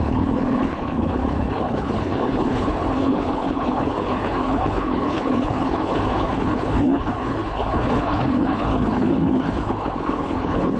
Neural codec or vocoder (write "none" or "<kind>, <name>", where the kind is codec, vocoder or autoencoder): codec, HILCodec